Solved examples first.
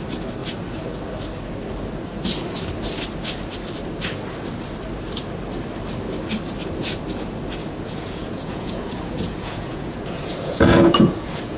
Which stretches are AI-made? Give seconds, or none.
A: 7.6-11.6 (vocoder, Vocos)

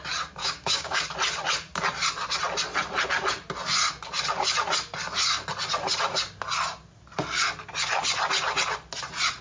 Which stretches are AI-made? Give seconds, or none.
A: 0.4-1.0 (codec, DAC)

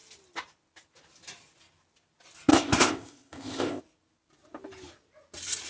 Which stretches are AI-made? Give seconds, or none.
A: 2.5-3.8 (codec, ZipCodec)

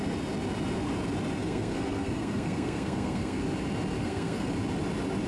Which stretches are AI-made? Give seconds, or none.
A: 1.4-3.4 (codec, SNAC); 4.0-4.5

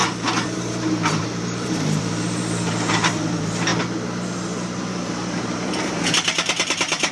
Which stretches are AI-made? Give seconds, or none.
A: 0.0-3.7 (vocoder, BigVGAN v2); 5.1-7.1